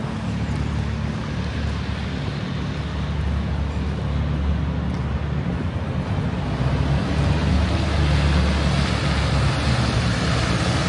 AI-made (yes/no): no